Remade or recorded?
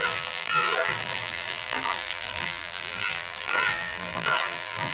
remade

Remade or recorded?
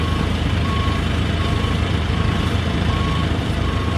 remade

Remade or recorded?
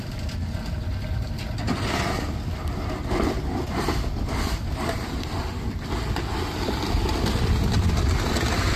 recorded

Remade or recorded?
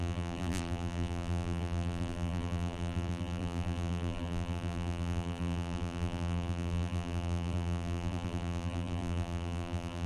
remade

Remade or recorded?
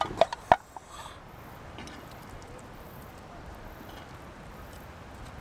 recorded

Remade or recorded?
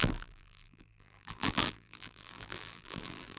remade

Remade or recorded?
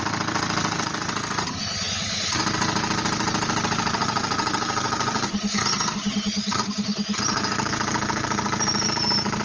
recorded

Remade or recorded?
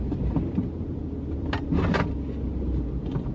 recorded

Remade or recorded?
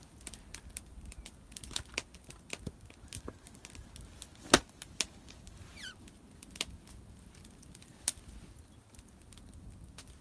recorded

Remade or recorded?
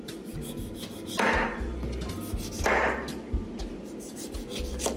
recorded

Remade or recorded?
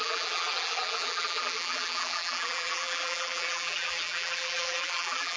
remade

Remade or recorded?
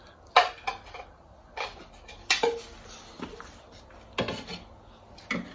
recorded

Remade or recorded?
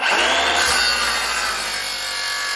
recorded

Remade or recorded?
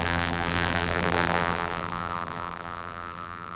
remade